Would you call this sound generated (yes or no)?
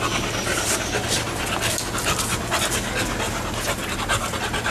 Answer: no